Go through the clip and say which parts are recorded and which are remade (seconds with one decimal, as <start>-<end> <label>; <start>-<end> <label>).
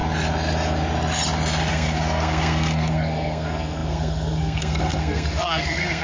0.0-1.7 recorded; 1.7-6.0 remade